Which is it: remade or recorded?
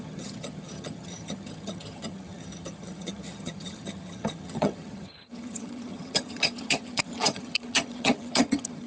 remade